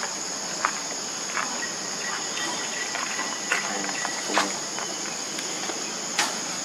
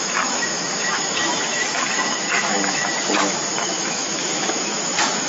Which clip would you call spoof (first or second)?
second